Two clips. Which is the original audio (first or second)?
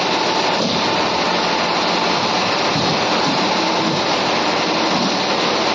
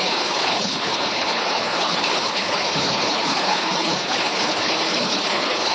first